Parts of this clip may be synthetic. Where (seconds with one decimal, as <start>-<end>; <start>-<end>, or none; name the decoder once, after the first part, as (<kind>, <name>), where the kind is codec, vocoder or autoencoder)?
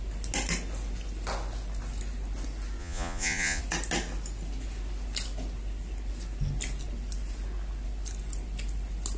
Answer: 2.8-3.6 (vocoder, Vocos)